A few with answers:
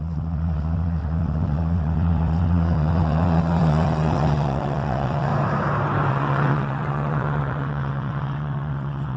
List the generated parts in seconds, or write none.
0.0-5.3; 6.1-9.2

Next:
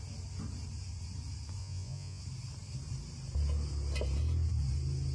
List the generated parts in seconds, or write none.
1.6-2.2

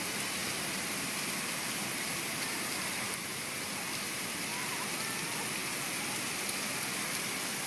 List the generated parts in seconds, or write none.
0.0-5.6

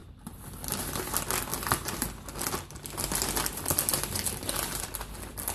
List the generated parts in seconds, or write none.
none

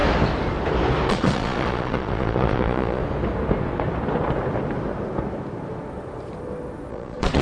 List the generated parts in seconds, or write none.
1.1-3.0; 6.9-7.4

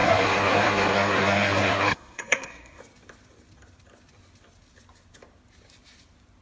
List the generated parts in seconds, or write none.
0.0-2.8

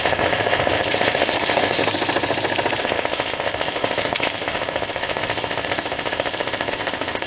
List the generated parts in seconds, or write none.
0.0-1.8; 2.8-7.3

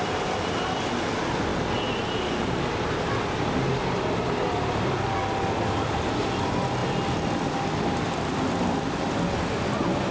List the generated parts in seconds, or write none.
6.8-8.3